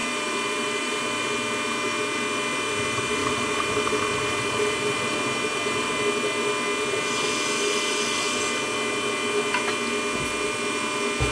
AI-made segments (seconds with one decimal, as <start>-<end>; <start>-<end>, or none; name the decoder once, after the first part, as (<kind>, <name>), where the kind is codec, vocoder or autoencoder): 0.0-1.2 (vocoder, BigVGAN v2); 3.2-4.9